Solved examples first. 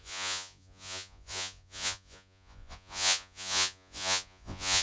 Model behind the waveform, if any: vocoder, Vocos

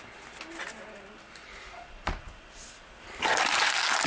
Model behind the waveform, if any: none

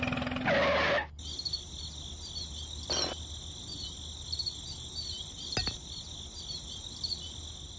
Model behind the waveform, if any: none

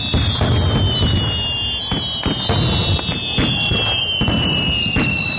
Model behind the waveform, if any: none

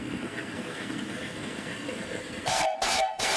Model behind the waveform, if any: codec, SNAC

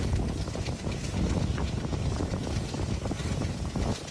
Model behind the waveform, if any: none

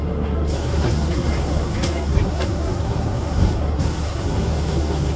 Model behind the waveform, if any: codec, SNAC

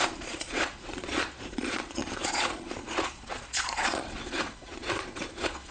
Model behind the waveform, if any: vocoder, Vocos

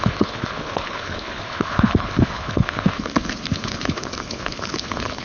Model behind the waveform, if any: codec, HILCodec